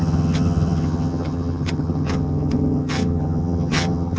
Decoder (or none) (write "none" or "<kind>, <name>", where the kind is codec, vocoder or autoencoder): vocoder, HiFi-GAN